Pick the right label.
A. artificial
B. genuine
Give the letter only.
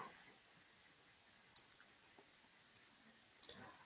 B